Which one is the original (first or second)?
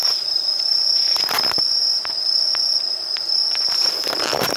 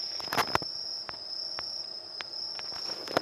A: second